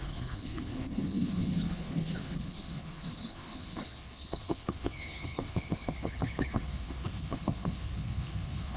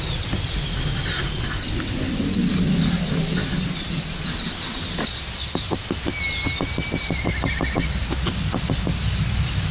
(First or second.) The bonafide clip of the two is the second